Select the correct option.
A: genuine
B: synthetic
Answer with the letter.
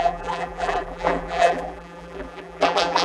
B